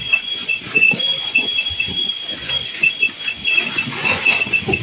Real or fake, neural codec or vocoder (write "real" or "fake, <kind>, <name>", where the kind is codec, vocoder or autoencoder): fake, vocoder, Vocos